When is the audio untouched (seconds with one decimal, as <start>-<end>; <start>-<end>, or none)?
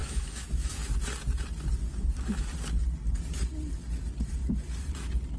0.9-5.4